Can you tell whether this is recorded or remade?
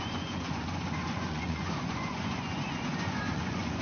remade